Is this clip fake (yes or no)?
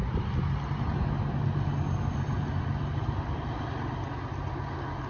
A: no